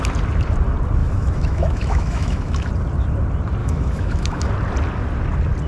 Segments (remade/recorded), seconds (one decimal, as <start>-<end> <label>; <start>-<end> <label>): 0.0-1.0 recorded; 1.0-2.7 remade; 2.7-3.6 recorded; 3.6-4.5 remade; 4.5-5.7 recorded